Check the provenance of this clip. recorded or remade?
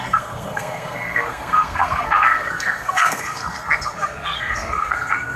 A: remade